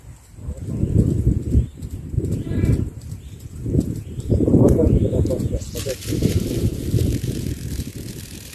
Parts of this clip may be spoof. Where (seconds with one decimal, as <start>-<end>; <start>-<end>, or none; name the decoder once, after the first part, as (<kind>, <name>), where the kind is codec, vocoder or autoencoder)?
1.7-6.8 (vocoder, BigVGAN v2)